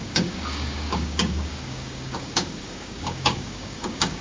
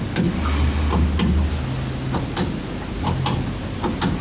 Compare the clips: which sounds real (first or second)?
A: second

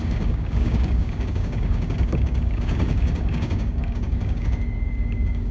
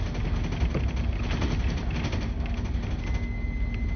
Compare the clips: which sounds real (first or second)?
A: second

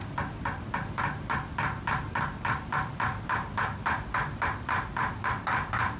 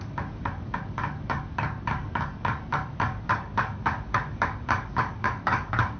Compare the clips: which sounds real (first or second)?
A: first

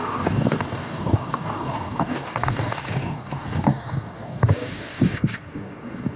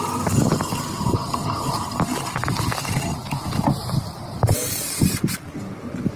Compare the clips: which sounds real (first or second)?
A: second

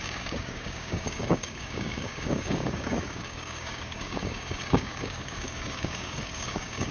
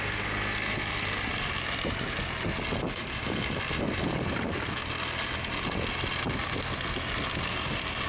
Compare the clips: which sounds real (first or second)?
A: second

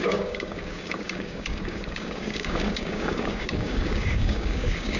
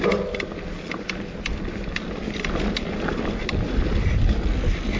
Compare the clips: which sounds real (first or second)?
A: second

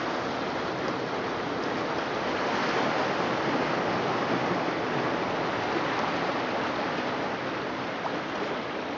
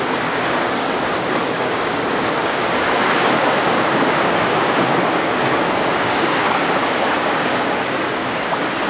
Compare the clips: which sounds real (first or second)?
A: first